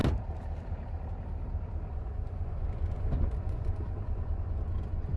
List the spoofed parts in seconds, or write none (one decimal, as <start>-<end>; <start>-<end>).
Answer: 1.9-5.2